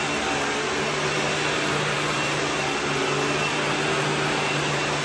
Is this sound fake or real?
real